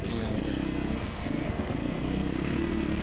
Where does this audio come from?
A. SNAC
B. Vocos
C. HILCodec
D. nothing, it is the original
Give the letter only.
A